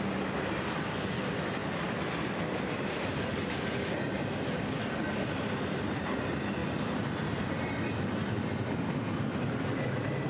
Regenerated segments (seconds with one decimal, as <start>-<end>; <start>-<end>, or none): none

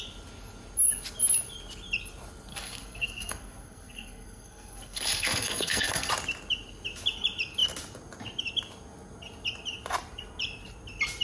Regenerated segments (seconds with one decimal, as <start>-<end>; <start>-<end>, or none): 2.5-6.1

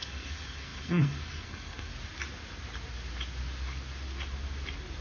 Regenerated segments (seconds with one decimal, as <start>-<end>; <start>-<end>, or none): 0.0-1.9

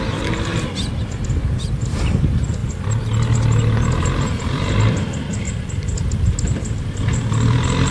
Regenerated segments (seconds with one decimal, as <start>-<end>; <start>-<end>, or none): none

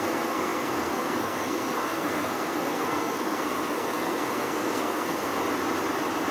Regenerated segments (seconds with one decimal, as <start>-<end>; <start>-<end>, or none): 0.0-5.3